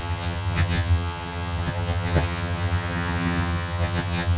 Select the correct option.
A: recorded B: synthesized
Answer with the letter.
B